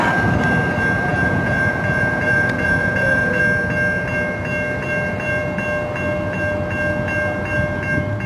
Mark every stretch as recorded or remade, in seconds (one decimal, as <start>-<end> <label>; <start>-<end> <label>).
0.0-1.1 recorded; 1.1-3.4 remade; 3.4-8.3 recorded

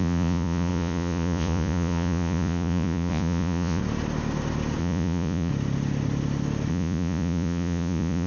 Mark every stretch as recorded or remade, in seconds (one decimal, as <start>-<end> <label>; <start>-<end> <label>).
0.0-3.8 remade; 3.8-4.8 recorded; 4.8-5.5 remade; 5.5-6.7 recorded; 6.7-8.3 remade

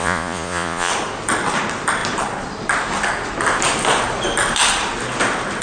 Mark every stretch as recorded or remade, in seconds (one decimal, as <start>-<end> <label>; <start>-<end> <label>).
0.0-0.9 remade; 0.9-5.6 recorded

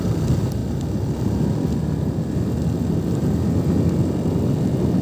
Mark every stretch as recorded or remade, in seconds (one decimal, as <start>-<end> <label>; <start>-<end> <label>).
0.0-5.0 recorded

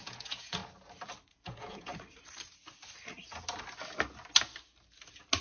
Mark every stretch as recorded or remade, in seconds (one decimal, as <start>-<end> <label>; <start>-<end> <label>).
0.0-0.6 remade; 0.6-1.3 recorded; 1.3-1.9 remade; 1.9-5.4 recorded

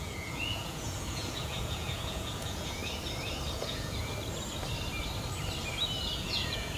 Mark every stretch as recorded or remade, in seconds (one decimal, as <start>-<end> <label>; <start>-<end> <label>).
0.0-2.8 remade; 2.8-3.5 recorded; 3.5-4.1 remade; 4.1-6.2 recorded; 6.2-6.8 remade

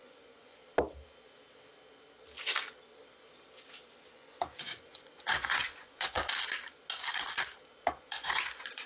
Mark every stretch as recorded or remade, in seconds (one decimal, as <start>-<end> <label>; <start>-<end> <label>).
0.0-0.6 remade; 0.6-4.1 recorded; 4.1-6.2 remade; 6.2-7.9 recorded; 7.9-8.9 remade

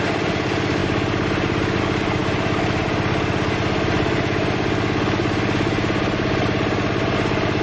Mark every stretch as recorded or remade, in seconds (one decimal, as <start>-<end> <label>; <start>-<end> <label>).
0.0-7.6 recorded